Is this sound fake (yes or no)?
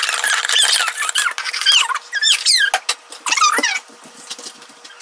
no